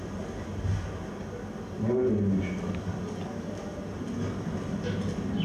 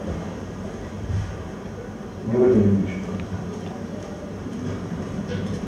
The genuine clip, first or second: first